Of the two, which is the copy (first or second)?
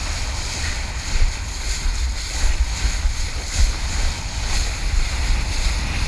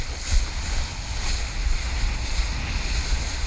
first